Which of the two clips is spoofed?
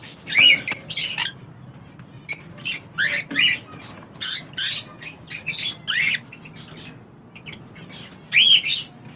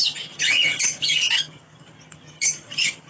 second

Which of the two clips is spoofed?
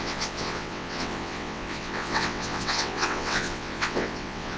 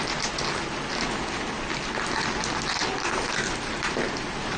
first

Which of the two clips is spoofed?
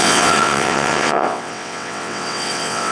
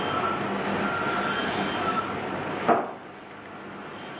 first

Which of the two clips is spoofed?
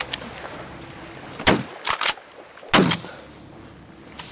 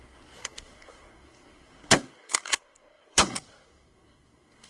second